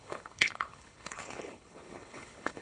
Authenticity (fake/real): fake